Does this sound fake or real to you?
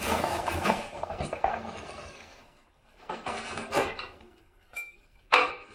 fake